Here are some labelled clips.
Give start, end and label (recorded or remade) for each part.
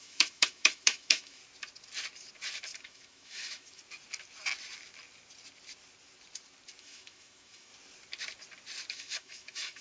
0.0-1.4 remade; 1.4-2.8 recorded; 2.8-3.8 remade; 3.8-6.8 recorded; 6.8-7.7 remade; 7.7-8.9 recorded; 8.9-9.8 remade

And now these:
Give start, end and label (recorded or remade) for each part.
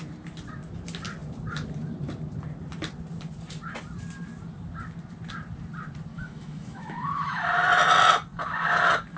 0.0-6.1 recorded; 6.1-7.5 remade; 7.5-9.2 recorded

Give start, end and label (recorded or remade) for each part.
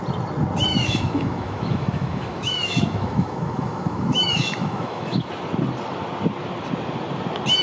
0.0-0.7 recorded; 0.7-5.3 remade; 5.3-7.6 recorded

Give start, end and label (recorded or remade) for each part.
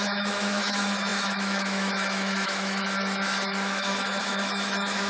0.0-5.1 remade